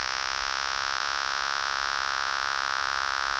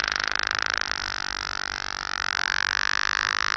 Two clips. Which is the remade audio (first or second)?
first